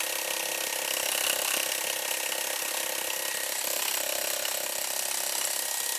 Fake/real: real